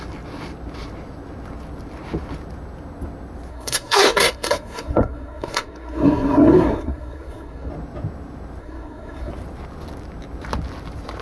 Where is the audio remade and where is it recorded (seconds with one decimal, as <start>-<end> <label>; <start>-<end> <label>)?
0.0-3.5 recorded; 3.5-7.7 remade; 7.7-8.6 recorded; 8.6-9.3 remade; 9.3-11.2 recorded